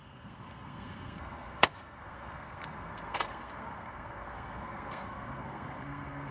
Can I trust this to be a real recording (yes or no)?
no